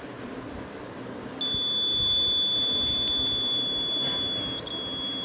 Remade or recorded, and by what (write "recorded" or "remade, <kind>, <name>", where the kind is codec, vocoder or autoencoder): recorded